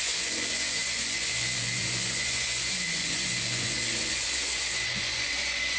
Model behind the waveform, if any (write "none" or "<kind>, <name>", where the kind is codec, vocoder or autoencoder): vocoder, Vocos